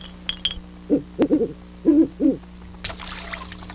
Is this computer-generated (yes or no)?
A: no